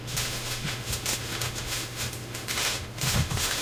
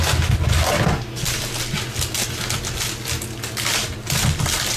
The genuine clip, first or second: second